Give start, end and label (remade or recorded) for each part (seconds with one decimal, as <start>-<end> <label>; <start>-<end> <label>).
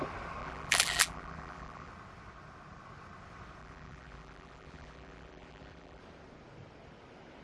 0.0-0.4 recorded; 0.4-1.9 remade; 1.9-3.6 recorded; 3.6-6.0 remade; 6.0-7.4 recorded